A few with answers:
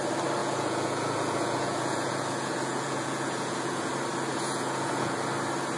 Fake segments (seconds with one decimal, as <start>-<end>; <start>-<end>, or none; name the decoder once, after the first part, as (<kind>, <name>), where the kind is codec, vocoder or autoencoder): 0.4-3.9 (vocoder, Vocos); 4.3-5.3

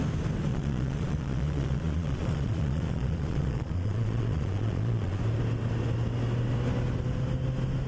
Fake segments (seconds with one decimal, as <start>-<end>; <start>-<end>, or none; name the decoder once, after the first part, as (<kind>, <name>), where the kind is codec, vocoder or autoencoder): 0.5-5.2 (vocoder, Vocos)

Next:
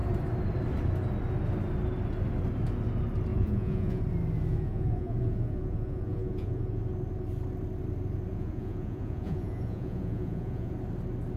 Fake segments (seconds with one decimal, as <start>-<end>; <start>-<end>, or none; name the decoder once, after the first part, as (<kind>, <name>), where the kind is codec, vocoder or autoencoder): 3.3-4.0 (vocoder, Vocos); 4.5-6.8; 8.3-10.7

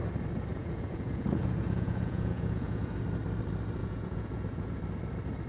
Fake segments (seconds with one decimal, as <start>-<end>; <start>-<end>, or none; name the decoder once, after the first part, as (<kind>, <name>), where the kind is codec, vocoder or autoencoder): 0.5-3.0 (vocoder, Vocos); 3.8-4.8